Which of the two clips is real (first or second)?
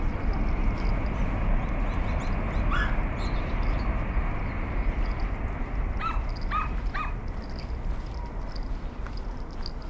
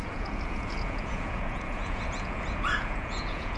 first